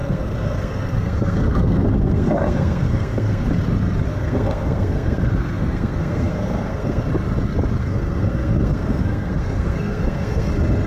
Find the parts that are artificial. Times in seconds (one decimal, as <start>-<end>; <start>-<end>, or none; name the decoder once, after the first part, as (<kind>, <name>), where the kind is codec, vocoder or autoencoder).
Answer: 0.0-3.5 (codec, SNAC); 4.1-7.0; 7.8-10.5